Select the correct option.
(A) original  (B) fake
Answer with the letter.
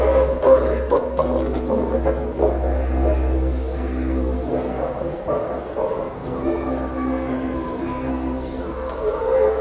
B